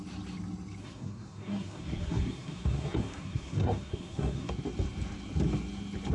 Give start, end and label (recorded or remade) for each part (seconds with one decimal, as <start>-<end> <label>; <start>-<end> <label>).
0.0-0.8 recorded; 0.8-4.5 remade; 4.5-6.1 recorded